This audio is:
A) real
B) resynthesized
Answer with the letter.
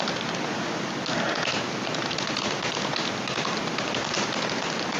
A